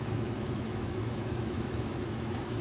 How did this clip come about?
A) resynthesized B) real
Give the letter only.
A